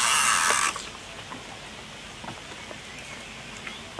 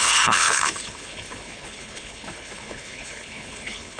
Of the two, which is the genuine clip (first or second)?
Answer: first